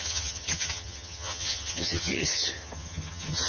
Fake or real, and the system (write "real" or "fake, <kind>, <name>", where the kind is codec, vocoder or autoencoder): fake, vocoder, HiFi-GAN